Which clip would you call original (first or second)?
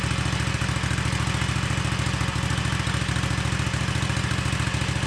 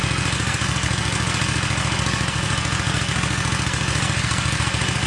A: first